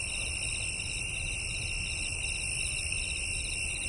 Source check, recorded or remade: recorded